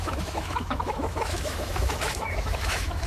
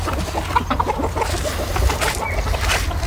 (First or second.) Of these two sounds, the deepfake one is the first